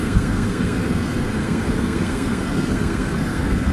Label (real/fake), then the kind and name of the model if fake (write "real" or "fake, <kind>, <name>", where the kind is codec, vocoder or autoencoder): fake, codec, SNAC